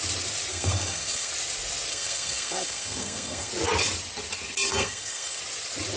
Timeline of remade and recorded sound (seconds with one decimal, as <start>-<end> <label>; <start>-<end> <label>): 0.0-0.5 recorded; 0.5-1.3 remade; 1.3-1.9 recorded; 1.9-3.5 remade; 3.5-4.7 recorded; 4.7-5.4 remade; 5.4-6.0 recorded